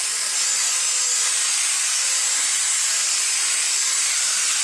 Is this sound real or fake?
real